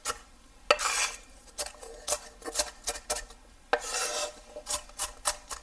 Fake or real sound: real